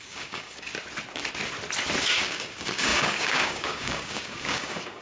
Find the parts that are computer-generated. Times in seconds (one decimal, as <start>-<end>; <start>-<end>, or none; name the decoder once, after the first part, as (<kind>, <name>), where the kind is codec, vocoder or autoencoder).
0.0-0.7 (codec, DAC); 2.0-5.0